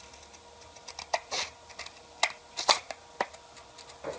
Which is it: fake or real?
real